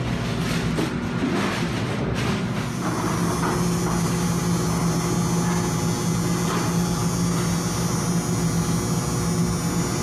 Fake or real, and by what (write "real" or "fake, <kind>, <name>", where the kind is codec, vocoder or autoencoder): real